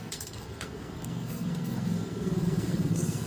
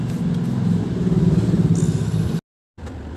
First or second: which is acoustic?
second